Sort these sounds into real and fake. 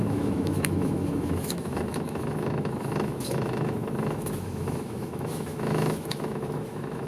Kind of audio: fake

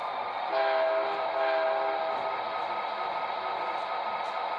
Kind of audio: real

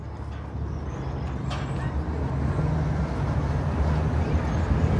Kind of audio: real